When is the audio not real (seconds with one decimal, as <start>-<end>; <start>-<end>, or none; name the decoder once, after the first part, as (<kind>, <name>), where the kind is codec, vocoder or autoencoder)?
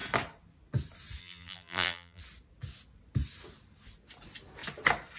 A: 1.2-2.2 (vocoder, BigVGAN v2)